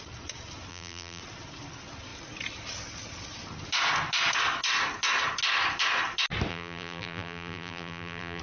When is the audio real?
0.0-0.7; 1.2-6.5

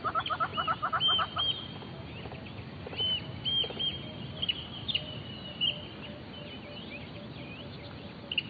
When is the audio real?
0.0-8.5